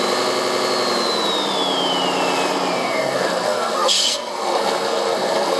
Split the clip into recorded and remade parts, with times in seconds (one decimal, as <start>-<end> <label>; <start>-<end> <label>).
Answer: 0.0-2.8 recorded; 2.8-5.6 remade

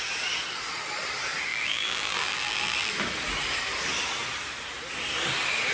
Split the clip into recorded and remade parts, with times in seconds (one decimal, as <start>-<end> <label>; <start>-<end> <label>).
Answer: 0.0-1.5 recorded; 1.5-2.9 remade; 2.9-5.7 recorded

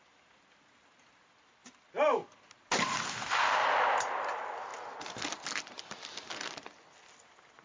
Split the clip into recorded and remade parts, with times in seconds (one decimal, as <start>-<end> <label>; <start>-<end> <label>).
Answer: 0.0-7.6 recorded

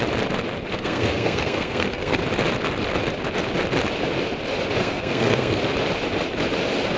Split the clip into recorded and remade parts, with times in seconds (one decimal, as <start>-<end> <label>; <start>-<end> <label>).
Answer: 0.0-0.7 recorded; 0.7-2.2 remade; 2.2-4.8 recorded; 4.8-5.6 remade; 5.6-7.0 recorded

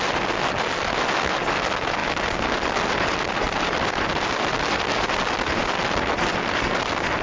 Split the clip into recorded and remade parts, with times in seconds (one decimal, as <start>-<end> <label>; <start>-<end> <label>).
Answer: 0.0-7.2 recorded